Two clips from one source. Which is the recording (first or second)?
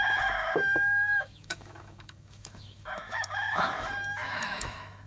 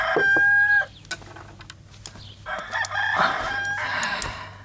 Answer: second